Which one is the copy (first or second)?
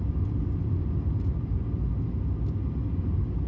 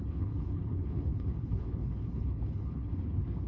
second